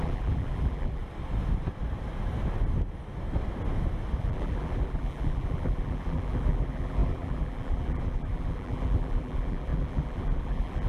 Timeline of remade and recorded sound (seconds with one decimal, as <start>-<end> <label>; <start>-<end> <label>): 0.0-1.0 remade; 1.0-4.2 recorded; 4.2-10.9 remade